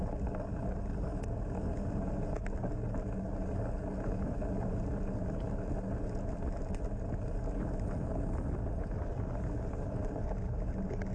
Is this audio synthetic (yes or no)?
no